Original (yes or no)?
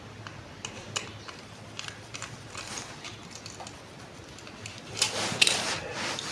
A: yes